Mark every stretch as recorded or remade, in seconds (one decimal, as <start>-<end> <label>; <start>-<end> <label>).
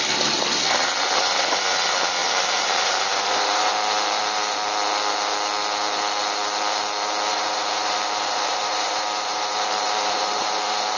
0.0-2.2 recorded; 2.2-3.7 remade; 3.7-7.3 recorded; 7.3-11.0 remade